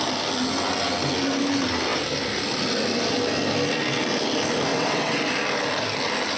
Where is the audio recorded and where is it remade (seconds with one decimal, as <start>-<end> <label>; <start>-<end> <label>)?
0.0-4.7 recorded; 4.7-5.2 remade; 5.2-6.4 recorded